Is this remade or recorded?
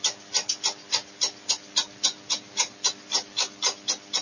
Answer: recorded